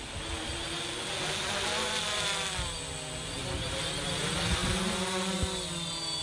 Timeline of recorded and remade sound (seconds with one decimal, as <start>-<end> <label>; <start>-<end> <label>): 0.0-6.2 recorded